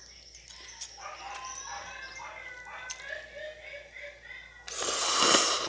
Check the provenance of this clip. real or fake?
real